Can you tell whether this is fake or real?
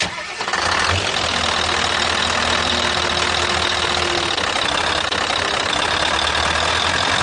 real